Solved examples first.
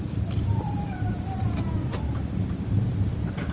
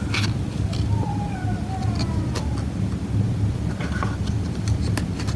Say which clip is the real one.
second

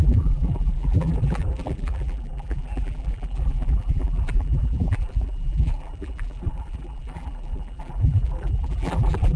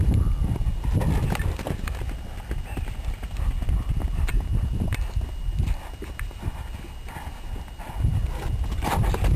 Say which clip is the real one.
second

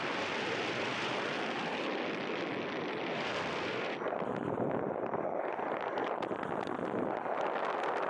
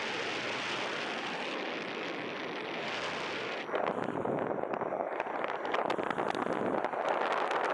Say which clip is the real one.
second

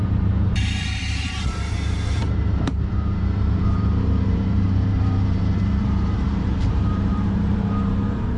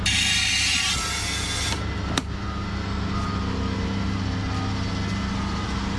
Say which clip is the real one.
second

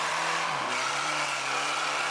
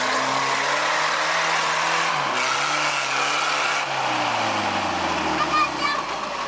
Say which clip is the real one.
second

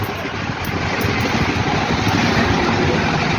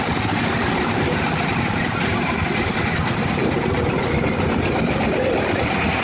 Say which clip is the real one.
first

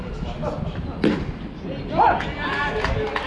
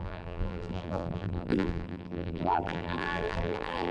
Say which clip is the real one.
first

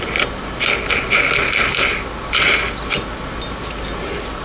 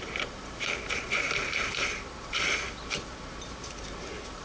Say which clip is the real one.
first